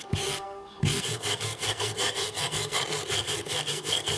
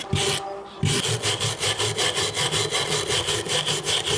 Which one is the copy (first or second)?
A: first